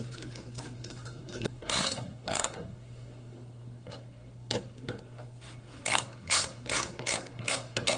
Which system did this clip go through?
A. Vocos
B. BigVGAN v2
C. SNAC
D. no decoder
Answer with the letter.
C